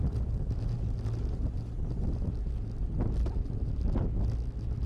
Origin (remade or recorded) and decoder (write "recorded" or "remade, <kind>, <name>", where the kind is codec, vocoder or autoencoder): recorded